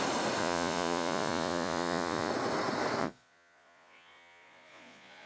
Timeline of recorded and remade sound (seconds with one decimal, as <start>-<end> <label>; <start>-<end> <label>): 0.0-0.4 recorded; 0.4-2.3 remade; 2.3-3.0 recorded; 3.0-5.3 remade